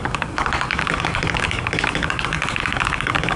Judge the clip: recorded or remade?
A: remade